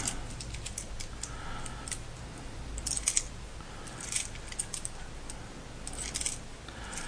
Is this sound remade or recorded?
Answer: recorded